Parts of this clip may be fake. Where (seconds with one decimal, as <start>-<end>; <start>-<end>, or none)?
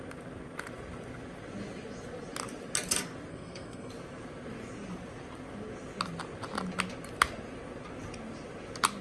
3.3-3.9